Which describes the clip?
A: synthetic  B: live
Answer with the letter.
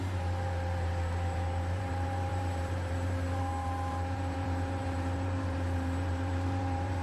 A